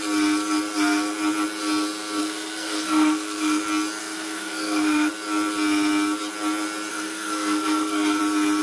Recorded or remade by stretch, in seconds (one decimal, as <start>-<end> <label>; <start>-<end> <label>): 0.0-2.2 recorded; 2.2-3.6 remade; 3.6-4.0 recorded; 4.0-5.1 remade; 5.1-6.9 recorded; 6.9-8.2 remade; 8.2-8.6 recorded